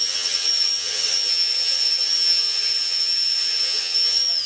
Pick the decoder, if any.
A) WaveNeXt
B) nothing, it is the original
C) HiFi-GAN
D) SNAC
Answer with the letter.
C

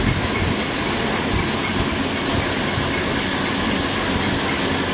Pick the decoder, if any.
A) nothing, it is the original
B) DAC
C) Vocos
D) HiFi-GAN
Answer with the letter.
A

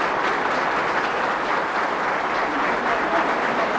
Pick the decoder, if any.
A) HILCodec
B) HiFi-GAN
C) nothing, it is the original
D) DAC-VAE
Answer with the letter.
C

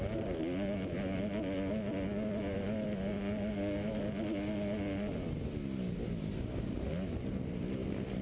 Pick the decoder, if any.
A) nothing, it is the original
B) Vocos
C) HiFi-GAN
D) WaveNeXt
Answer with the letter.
A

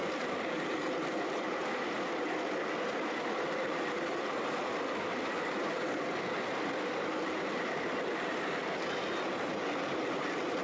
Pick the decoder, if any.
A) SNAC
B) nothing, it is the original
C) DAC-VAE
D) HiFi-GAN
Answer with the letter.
B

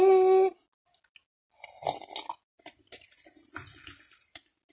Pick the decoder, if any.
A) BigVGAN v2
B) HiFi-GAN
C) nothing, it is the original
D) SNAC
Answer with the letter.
C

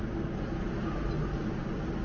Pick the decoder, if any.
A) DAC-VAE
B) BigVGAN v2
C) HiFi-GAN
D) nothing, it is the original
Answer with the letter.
D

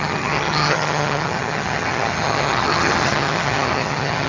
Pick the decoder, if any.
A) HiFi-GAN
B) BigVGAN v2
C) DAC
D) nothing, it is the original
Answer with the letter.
A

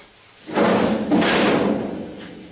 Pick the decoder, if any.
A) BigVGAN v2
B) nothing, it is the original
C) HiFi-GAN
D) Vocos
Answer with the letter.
B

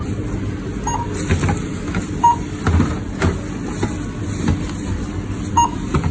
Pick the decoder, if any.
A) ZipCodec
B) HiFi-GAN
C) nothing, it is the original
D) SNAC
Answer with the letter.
C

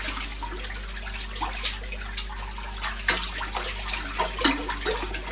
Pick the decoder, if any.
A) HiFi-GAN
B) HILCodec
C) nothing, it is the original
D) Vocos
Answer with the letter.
C